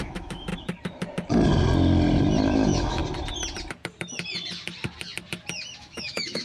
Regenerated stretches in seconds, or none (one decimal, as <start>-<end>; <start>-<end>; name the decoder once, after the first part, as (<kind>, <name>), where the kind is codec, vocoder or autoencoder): 0.0-0.5 (autoencoder, DAC-VAE); 2.5-3.0; 5.8-6.4